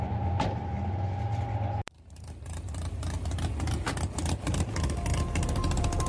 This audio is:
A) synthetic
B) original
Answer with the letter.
B